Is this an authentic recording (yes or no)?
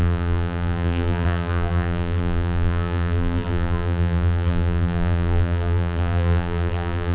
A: no